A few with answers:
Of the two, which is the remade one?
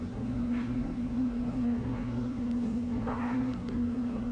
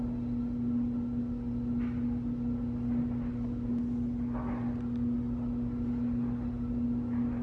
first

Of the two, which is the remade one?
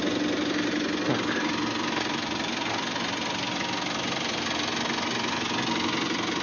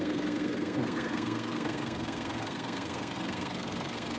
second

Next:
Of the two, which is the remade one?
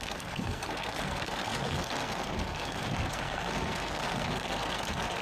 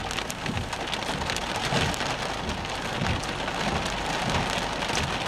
first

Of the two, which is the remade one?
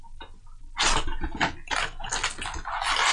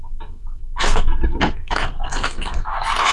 second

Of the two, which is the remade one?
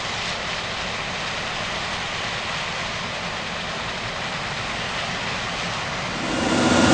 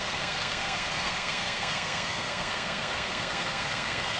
second